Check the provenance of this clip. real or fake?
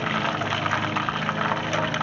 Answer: real